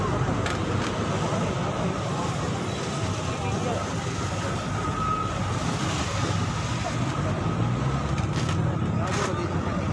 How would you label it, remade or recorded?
recorded